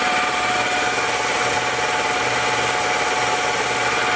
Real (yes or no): yes